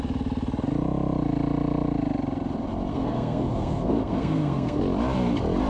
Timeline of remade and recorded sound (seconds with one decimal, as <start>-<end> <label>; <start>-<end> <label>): 0.0-2.9 recorded; 2.9-4.8 remade; 4.8-5.7 recorded